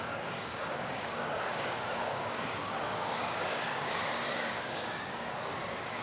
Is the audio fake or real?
fake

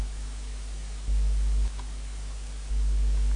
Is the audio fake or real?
fake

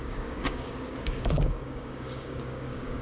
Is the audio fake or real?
fake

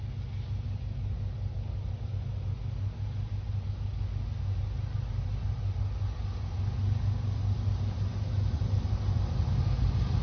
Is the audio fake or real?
real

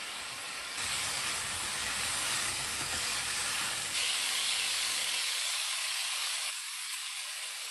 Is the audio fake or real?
fake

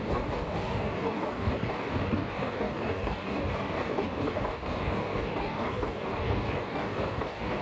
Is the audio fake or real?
fake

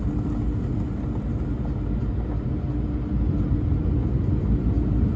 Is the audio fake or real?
real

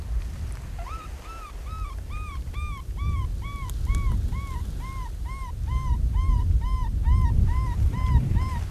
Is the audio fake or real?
real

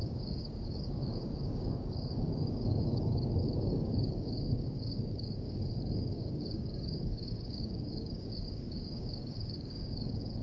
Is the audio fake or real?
fake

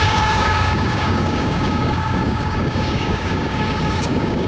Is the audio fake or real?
fake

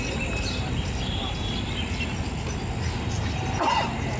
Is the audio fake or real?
real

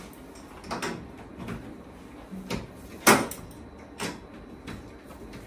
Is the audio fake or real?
real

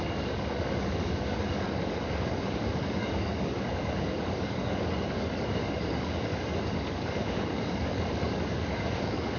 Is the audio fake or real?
fake